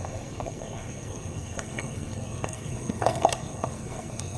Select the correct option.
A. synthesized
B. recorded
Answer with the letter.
A